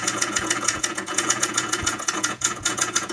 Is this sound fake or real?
fake